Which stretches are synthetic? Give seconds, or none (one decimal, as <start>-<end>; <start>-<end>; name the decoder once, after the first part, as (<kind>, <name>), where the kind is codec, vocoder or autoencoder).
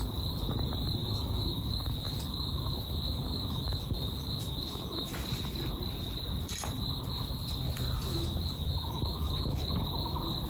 1.0-5.2 (autoencoder, DAC-VAE); 8.1-9.7